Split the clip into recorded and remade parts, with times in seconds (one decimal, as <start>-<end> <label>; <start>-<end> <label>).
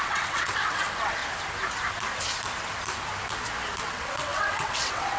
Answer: 0.0-1.2 remade; 1.2-3.8 recorded; 3.8-5.2 remade